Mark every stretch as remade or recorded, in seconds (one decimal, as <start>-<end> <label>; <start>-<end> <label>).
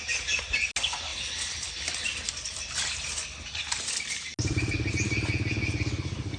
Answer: 0.0-6.4 recorded